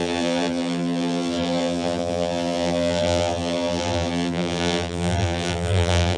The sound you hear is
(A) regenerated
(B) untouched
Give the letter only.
A